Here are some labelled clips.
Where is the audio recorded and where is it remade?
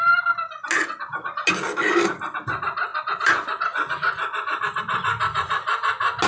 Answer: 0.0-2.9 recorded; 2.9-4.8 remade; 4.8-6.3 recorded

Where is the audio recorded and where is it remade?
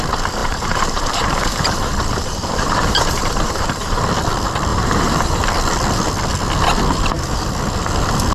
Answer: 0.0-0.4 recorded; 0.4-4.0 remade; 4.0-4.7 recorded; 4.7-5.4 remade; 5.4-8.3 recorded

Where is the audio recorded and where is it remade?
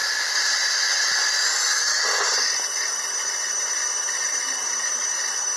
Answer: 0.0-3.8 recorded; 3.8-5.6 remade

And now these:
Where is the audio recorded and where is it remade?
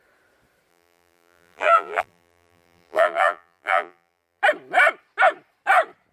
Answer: 0.0-0.7 recorded; 0.7-4.4 remade; 4.4-6.1 recorded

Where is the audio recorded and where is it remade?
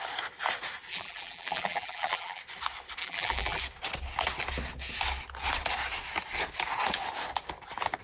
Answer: 0.0-0.9 recorded; 0.9-2.4 remade; 2.4-3.0 recorded; 3.0-3.6 remade; 3.6-8.0 recorded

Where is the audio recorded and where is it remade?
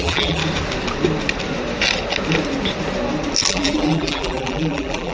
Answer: 0.0-0.4 remade; 0.4-3.5 recorded; 3.5-5.1 remade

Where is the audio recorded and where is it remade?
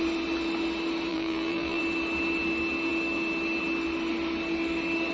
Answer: 0.0-1.1 recorded; 1.1-1.8 remade; 1.8-5.1 recorded